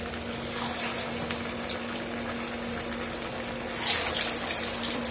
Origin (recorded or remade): recorded